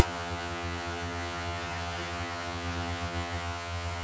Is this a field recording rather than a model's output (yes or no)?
no